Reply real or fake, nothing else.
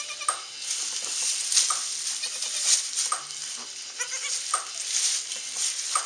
real